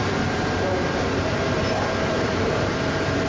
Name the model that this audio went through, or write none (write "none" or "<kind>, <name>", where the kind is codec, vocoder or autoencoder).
vocoder, BigVGAN v2